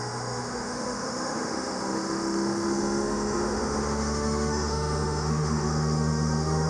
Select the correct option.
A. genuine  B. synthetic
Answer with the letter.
B